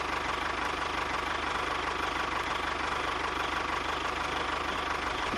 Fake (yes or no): no